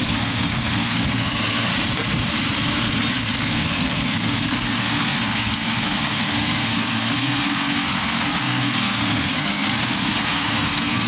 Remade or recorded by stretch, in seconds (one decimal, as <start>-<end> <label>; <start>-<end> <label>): 0.0-1.7 remade; 1.7-3.1 recorded; 3.1-11.1 remade